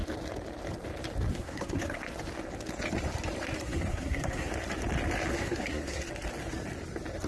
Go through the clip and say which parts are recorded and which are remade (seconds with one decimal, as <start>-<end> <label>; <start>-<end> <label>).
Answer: 0.0-1.3 recorded; 1.3-2.0 remade; 2.0-3.6 recorded; 3.6-4.5 remade; 4.5-5.3 recorded; 5.3-6.1 remade; 6.1-7.3 recorded